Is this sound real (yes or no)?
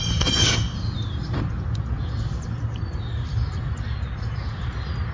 yes